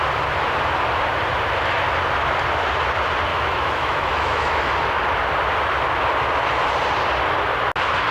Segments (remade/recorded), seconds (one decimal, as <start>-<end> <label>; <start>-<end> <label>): 0.0-3.3 recorded; 3.3-4.7 remade; 4.7-8.1 recorded